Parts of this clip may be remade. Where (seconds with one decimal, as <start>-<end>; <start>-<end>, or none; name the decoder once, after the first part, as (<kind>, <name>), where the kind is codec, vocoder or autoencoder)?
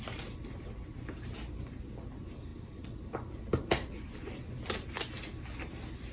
none